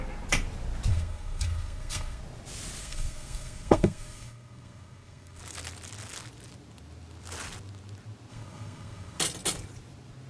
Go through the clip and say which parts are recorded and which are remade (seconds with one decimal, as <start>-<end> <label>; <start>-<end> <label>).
0.0-0.9 recorded; 0.9-2.2 remade; 2.2-2.8 recorded; 2.8-5.4 remade; 5.4-8.3 recorded; 8.3-9.2 remade; 9.2-10.3 recorded